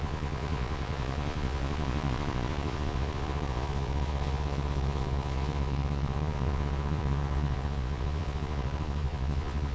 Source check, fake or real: fake